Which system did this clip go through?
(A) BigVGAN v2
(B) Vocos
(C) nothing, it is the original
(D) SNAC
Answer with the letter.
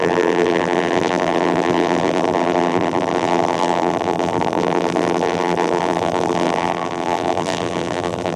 A